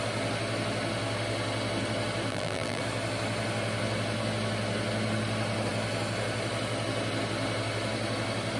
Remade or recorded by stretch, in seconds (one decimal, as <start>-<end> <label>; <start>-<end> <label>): 0.0-2.3 recorded; 2.3-2.8 remade; 2.8-8.6 recorded